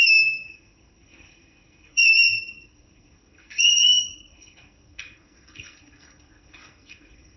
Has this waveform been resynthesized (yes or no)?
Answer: yes